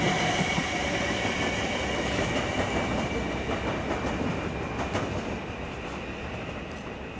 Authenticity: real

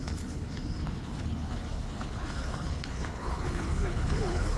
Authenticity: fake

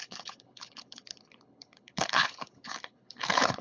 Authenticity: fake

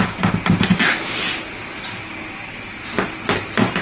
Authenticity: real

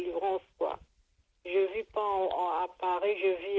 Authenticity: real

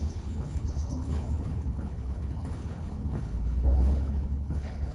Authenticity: fake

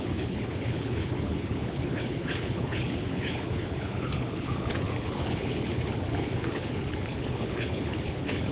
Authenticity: fake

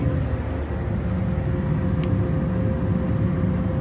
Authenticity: real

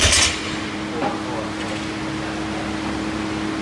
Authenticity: real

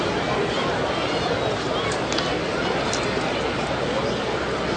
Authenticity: real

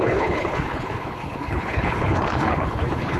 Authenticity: fake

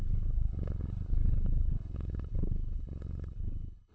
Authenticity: fake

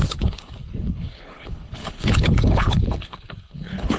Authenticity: fake